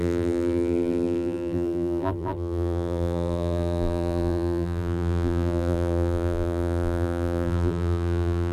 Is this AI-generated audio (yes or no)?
yes